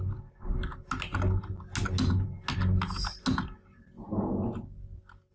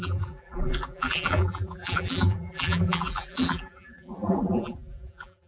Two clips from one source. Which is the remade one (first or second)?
second